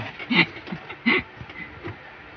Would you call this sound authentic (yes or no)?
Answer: yes